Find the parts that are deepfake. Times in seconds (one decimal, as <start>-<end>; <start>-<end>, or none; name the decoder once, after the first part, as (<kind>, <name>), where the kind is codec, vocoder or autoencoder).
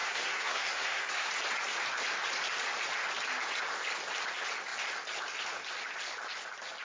0.0-1.3 (codec, SNAC)